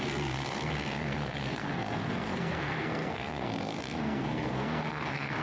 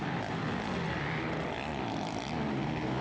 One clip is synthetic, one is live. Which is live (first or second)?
second